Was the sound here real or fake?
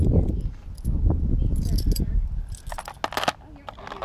real